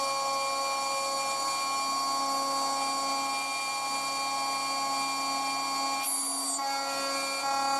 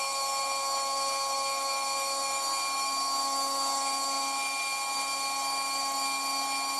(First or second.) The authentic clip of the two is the first